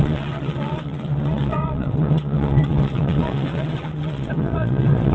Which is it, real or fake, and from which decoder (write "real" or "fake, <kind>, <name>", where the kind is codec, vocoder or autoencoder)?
fake, vocoder, WaveNeXt